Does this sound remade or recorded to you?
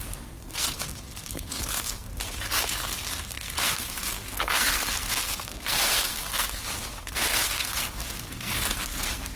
remade